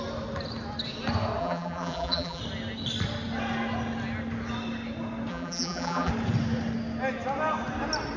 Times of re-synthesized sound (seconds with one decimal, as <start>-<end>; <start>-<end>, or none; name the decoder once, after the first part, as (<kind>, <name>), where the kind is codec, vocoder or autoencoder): 1.4-2.4 (vocoder, BigVGAN v2); 5.3-6.1